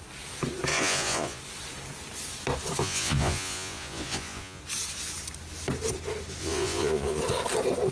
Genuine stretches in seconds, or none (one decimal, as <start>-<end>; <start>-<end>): 0.0-0.7; 1.4-2.8; 4.6-6.4; 7.2-7.9